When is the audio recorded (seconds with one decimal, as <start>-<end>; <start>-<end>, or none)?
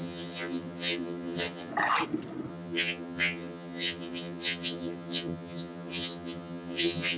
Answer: 1.7-2.5